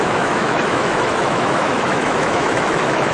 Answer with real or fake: fake